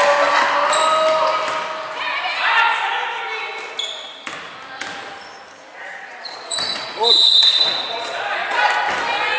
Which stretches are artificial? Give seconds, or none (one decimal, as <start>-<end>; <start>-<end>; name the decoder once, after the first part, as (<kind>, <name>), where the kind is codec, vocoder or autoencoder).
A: 5.7-8.6 (vocoder, Vocos)